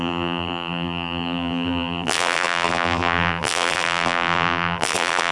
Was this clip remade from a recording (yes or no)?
yes